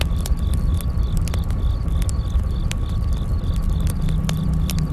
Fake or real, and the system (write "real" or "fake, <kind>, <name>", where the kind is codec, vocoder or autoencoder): real